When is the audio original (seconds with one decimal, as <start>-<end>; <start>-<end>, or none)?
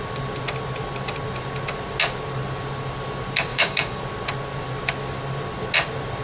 0.0-3.5; 4.0-6.2